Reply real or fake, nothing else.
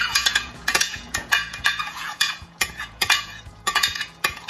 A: fake